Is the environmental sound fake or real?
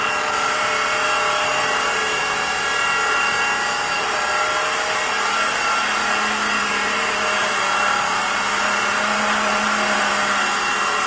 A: real